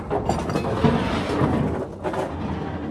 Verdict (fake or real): real